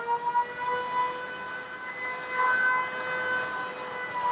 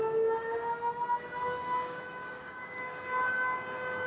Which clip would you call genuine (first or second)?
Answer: first